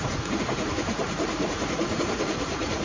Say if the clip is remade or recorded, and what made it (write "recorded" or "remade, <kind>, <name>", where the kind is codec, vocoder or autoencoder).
remade, vocoder, Vocos